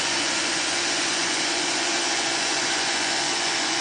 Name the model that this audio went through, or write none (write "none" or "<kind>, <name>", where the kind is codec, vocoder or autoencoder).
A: vocoder, Vocos